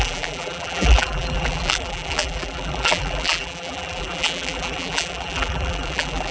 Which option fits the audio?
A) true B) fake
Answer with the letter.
B